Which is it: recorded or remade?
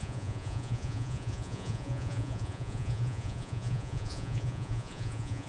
remade